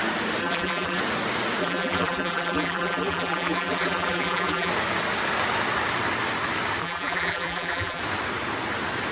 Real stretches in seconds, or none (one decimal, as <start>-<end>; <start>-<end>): 0.0-0.4; 1.0-1.6; 4.7-6.8; 8.0-9.1